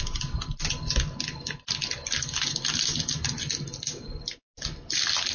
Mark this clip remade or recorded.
recorded